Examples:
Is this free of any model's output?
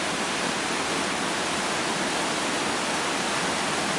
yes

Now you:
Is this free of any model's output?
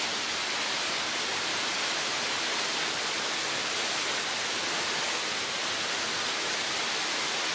yes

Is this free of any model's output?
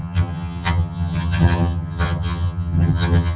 no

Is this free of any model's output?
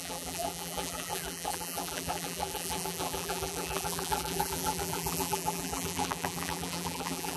no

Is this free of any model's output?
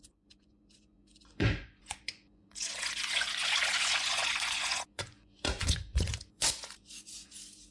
no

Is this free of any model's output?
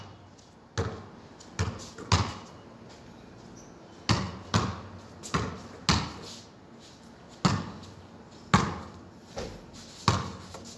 yes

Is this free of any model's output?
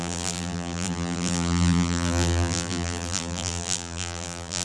no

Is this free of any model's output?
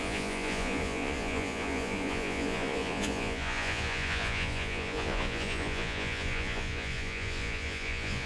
no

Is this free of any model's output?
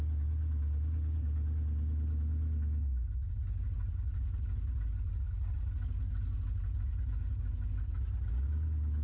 yes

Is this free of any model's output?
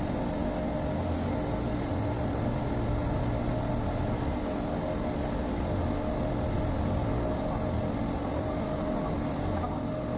yes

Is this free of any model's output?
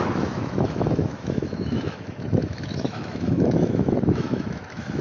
no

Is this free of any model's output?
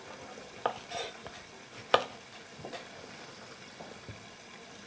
yes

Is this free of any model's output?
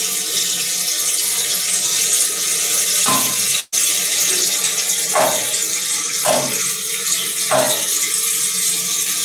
yes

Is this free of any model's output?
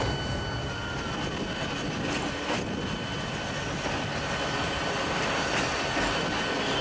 yes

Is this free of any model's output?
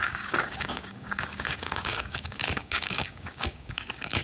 no